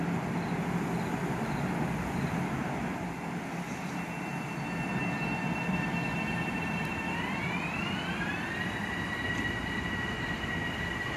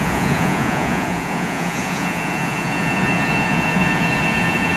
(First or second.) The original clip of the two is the first